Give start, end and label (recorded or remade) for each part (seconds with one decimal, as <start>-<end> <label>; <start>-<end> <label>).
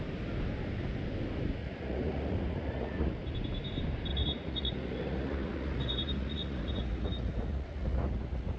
0.0-1.6 recorded; 1.6-3.2 remade; 3.2-4.1 recorded; 4.1-8.6 remade